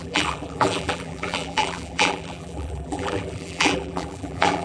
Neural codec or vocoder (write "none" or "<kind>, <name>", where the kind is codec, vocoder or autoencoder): vocoder, BigVGAN v2